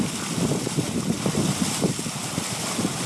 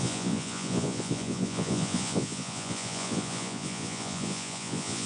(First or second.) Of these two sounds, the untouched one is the first